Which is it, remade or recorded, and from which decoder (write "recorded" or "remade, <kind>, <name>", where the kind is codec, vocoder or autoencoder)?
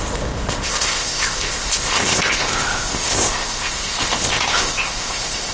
remade, codec, ZipCodec